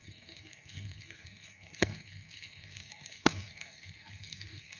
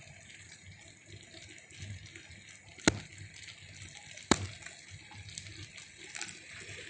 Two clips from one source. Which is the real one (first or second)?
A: second